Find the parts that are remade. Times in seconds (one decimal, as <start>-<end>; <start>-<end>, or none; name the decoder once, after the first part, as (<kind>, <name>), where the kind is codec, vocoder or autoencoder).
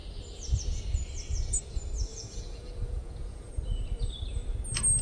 2.1-3.5 (vocoder, Vocos)